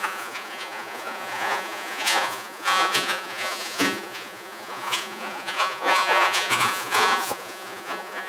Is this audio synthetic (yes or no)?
yes